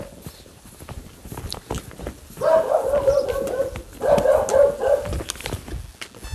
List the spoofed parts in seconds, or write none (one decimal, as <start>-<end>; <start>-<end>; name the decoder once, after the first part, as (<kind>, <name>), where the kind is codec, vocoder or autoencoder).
0.5-1.4 (vocoder, BigVGAN v2)